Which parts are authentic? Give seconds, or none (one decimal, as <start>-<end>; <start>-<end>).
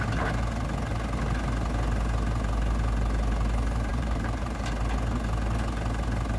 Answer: 0.0-3.9; 4.7-6.4